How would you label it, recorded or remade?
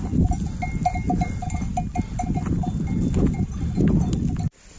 recorded